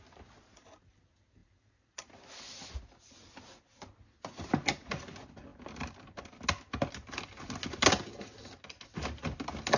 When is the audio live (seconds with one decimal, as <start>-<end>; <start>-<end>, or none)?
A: 0.0-9.8